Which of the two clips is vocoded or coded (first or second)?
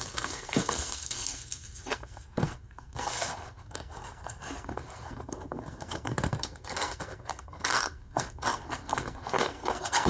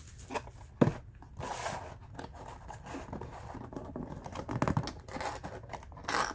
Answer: first